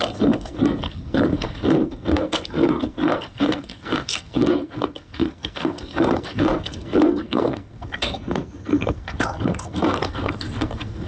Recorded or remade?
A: remade